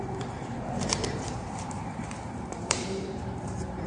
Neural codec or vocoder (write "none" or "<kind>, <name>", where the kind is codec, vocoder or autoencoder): vocoder, BigVGAN v2